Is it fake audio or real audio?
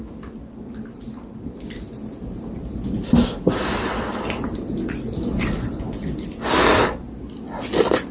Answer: real